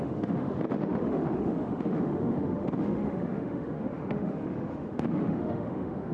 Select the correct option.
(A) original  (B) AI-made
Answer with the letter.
B